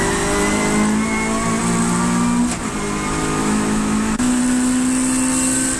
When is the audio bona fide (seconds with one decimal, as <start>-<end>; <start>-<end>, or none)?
0.0-3.4; 4.4-5.8